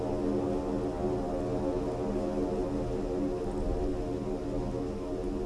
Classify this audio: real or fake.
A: real